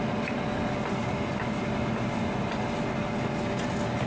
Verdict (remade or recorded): recorded